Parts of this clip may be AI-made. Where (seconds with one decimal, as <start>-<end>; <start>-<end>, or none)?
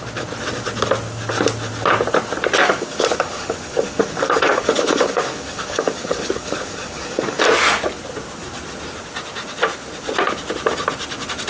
2.6-7.4